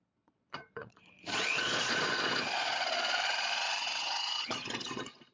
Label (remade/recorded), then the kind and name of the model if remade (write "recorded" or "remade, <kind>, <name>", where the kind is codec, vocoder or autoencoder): remade, vocoder, Vocos